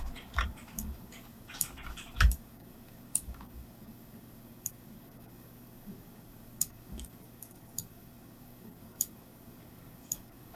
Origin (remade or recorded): remade